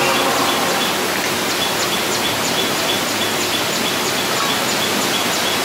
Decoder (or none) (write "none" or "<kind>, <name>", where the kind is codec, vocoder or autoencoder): none